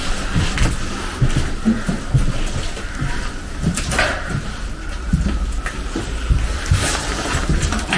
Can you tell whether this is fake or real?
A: real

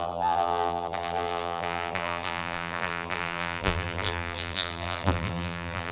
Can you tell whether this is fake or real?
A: fake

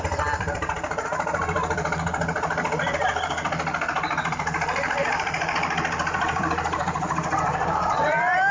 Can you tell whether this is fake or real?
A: fake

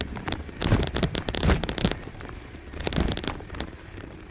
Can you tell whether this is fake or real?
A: fake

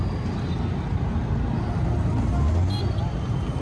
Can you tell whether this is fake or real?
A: real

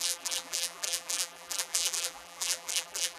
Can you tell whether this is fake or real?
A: fake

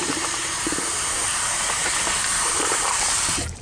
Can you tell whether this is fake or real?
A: fake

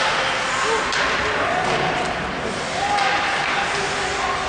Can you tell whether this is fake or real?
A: real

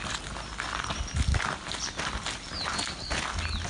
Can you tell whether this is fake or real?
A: real